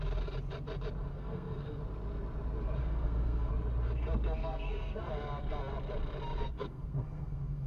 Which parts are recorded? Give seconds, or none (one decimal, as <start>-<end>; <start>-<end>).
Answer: 0.0-1.1; 1.8-2.8; 3.5-4.4; 5.1-6.4